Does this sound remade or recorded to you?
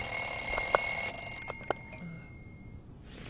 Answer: recorded